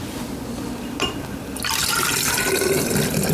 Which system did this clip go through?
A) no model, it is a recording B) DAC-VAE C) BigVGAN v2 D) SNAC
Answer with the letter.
C